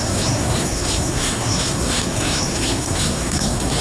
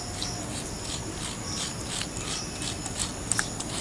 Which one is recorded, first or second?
second